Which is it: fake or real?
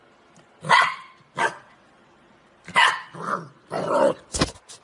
real